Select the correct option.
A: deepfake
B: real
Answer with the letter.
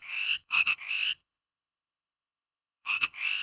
A